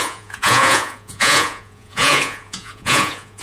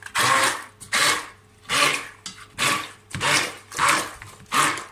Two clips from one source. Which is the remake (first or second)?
first